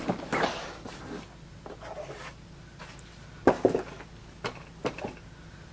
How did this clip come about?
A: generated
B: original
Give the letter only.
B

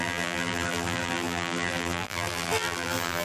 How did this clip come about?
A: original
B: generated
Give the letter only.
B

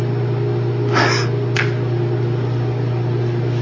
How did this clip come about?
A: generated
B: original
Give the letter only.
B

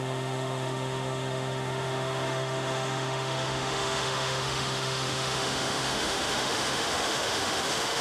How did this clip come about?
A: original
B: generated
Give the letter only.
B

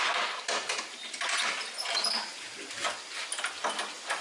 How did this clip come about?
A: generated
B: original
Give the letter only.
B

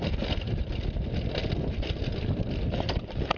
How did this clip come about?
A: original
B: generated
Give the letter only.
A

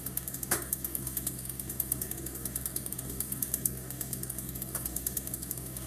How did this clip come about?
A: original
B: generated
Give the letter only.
B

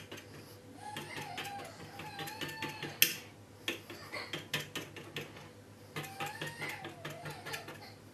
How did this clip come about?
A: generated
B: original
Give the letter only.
B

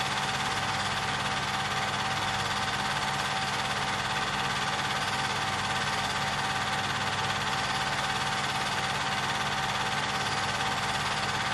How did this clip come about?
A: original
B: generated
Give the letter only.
A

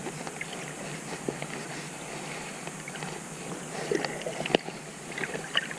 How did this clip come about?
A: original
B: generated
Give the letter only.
A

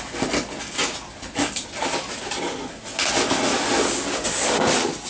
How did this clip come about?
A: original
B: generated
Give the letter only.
A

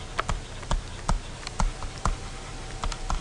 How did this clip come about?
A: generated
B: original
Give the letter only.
B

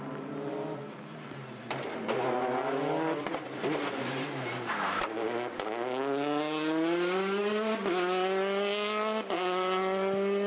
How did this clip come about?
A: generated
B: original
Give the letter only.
B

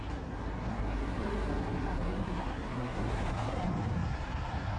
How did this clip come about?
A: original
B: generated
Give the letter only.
B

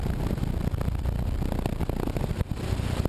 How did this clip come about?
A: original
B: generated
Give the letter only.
A